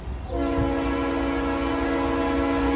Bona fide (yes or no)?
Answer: yes